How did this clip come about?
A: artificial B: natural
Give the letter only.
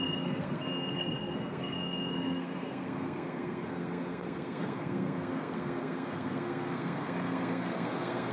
A